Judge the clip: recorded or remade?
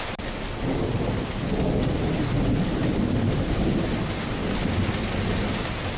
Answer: recorded